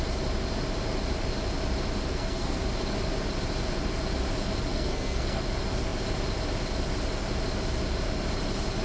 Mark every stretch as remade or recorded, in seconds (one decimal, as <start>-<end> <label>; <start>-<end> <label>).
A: 0.0-2.1 recorded; 2.1-2.6 remade; 2.6-4.7 recorded; 4.7-5.4 remade; 5.4-8.8 recorded